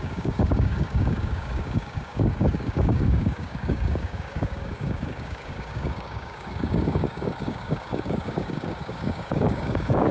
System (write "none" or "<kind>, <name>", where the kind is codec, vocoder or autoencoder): codec, DAC